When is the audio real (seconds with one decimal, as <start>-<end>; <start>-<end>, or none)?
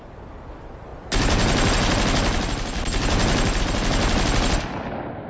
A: 0.0-5.3